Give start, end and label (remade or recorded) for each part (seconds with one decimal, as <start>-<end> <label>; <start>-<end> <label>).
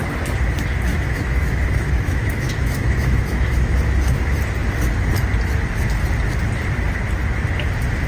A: 0.0-0.9 recorded; 0.9-3.8 remade; 3.8-8.1 recorded